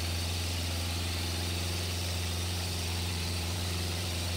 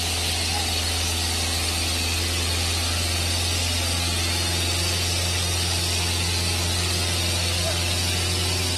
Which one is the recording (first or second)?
second